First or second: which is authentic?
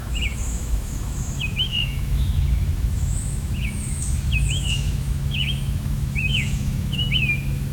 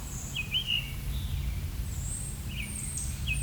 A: second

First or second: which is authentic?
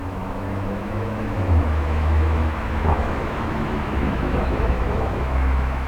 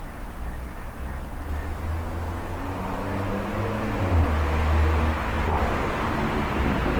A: second